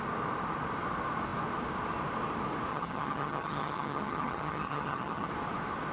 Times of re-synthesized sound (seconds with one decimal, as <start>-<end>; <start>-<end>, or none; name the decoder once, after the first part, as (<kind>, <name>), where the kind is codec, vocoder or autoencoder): 2.7-5.3 (vocoder, HiFi-GAN)